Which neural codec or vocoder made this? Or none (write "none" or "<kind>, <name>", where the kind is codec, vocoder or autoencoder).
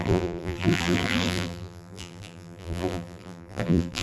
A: vocoder, BigVGAN v2